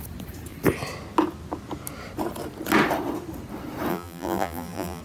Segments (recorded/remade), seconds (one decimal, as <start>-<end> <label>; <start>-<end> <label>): 0.0-3.9 recorded; 3.9-5.0 remade